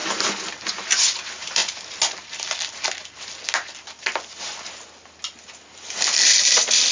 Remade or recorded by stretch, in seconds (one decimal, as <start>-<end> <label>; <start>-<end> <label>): 0.0-6.9 recorded

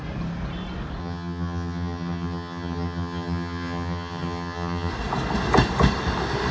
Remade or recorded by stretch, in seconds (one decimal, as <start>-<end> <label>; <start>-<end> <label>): 0.0-1.0 recorded; 1.0-4.9 remade; 4.9-6.5 recorded

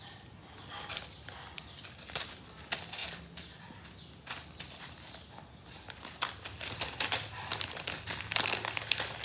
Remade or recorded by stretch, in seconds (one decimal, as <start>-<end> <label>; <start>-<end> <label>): 0.0-9.2 recorded

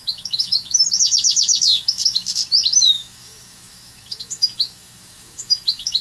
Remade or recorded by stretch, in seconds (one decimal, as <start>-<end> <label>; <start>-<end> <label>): 0.0-2.4 remade; 2.4-2.9 recorded; 2.9-6.0 remade